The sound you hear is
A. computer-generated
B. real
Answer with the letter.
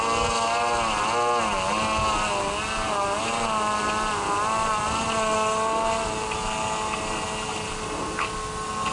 B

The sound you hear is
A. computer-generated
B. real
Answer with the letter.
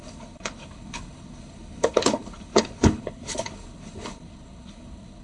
A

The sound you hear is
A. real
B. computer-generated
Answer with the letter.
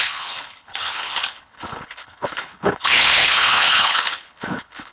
B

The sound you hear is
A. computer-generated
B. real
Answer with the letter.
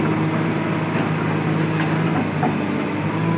B